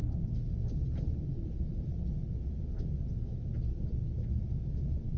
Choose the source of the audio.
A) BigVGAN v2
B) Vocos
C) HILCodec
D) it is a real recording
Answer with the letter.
D